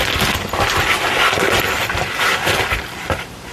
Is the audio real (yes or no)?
yes